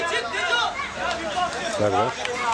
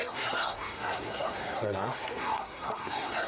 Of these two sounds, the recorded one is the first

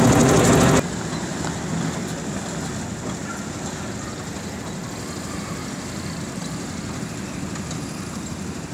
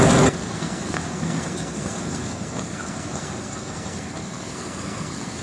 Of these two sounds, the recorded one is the first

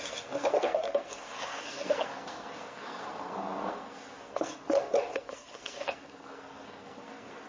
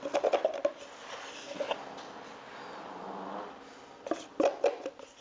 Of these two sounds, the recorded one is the second